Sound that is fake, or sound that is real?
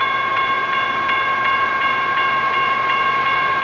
fake